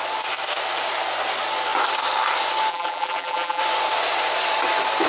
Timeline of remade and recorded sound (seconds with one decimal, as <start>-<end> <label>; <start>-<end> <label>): 0.0-2.7 recorded; 2.7-3.6 remade; 3.6-5.1 recorded